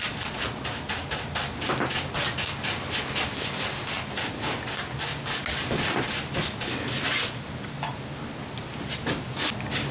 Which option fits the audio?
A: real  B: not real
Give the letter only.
A